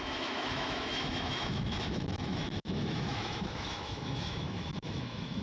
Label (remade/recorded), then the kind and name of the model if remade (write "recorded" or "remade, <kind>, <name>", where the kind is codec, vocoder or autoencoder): remade, autoencoder, DAC-VAE